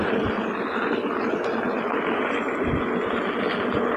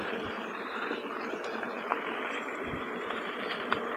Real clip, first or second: first